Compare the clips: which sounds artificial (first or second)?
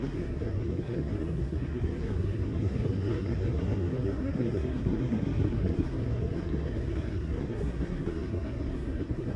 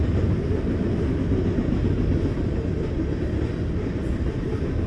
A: first